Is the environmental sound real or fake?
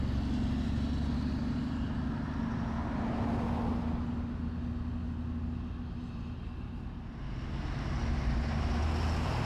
real